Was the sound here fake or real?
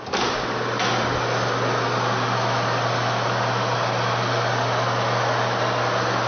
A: real